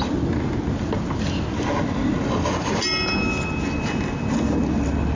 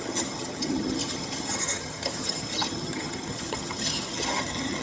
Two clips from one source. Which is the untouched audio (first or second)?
first